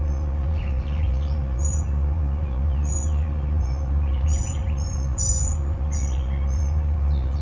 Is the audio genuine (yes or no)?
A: no